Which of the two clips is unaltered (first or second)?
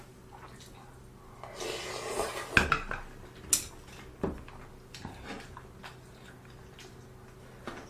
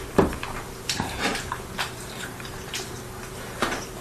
first